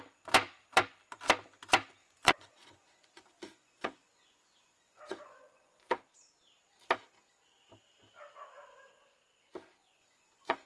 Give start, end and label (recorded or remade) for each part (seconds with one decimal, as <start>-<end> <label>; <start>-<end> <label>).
0.0-2.0 recorded; 2.0-5.9 remade; 5.9-9.8 recorded; 9.8-10.7 remade